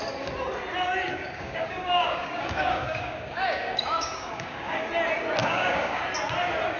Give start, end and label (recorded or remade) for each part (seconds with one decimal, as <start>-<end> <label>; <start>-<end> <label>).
0.0-1.1 recorded; 1.1-4.9 remade; 4.9-5.4 recorded; 5.4-6.0 remade; 6.0-6.8 recorded

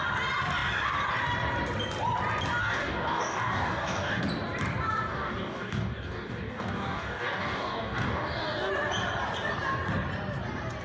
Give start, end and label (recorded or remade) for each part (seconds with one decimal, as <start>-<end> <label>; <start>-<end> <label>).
0.0-2.6 recorded; 2.6-4.2 remade; 4.2-5.1 recorded; 5.1-8.7 remade; 8.7-10.8 recorded

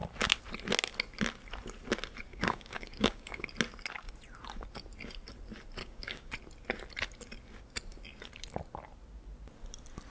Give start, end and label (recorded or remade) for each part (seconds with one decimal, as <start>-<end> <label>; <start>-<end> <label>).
0.0-2.3 recorded; 2.3-3.5 remade; 3.5-5.8 recorded; 5.8-6.3 remade; 6.3-10.1 recorded

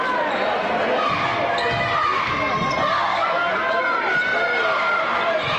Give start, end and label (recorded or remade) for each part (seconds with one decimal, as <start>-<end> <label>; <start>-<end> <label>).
0.0-3.1 recorded; 3.1-3.8 remade; 3.8-5.6 recorded